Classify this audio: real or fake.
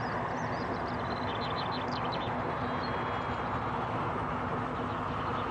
real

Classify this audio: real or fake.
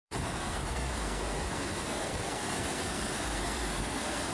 fake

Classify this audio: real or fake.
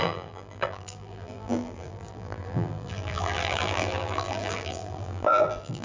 fake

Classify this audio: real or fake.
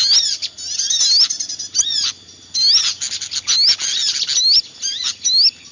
real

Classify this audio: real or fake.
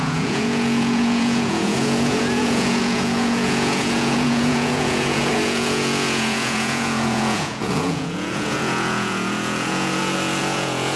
fake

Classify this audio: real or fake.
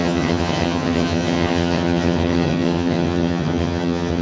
fake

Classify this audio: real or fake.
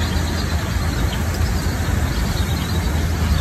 real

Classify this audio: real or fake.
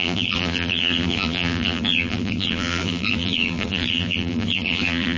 fake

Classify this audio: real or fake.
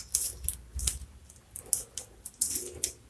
real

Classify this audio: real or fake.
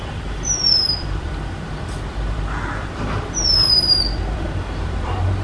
fake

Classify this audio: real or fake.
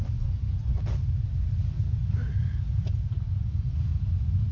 real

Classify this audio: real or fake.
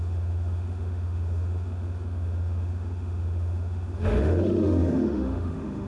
fake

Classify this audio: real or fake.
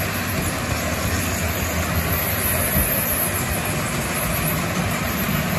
real